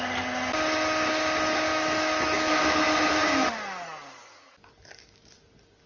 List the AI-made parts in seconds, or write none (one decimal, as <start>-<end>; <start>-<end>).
1.7-3.5